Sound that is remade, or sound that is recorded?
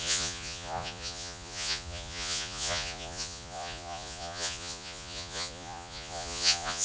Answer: remade